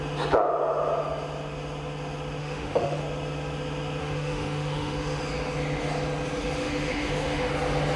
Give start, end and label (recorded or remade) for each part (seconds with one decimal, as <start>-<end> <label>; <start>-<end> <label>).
0.0-2.4 recorded; 2.4-3.0 remade; 3.0-4.0 recorded; 4.0-5.2 remade; 5.2-6.6 recorded; 6.6-7.5 remade; 7.5-8.0 recorded